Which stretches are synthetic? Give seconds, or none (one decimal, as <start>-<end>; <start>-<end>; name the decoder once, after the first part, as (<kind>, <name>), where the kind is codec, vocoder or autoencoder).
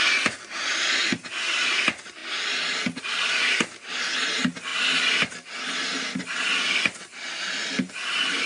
none